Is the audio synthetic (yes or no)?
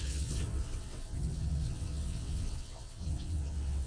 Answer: yes